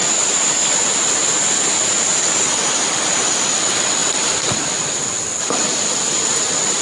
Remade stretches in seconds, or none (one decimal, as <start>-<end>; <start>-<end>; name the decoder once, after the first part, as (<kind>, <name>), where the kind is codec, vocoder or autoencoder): none